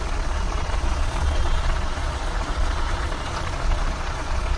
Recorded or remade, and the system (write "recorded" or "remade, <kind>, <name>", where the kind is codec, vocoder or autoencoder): remade, vocoder, Vocos